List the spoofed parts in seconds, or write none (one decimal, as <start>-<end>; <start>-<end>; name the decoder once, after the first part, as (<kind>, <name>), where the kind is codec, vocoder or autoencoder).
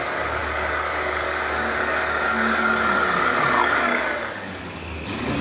0.0-5.4 (codec, DAC)